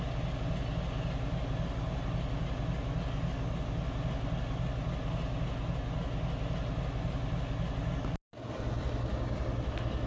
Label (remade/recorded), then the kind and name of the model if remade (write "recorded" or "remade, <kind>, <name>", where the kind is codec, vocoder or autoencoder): recorded